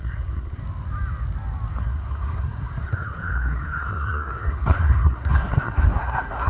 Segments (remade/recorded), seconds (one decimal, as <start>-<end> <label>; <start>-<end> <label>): 0.0-0.6 remade; 0.6-1.8 recorded; 1.8-6.5 remade